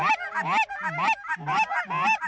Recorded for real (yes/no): yes